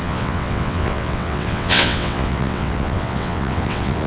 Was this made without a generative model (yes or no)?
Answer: no